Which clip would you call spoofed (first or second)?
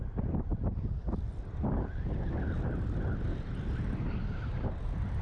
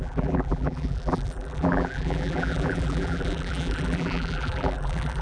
second